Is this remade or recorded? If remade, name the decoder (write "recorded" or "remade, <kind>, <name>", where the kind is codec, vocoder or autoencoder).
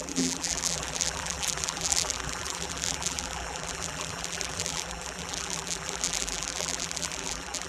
remade, vocoder, BigVGAN v2